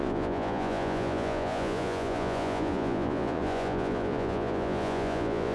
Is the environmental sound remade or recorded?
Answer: remade